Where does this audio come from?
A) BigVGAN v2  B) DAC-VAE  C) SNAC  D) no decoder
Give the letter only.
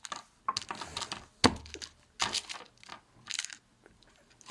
D